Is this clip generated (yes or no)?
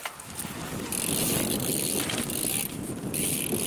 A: no